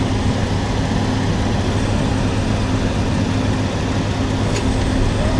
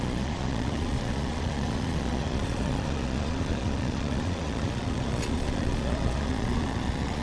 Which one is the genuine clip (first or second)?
first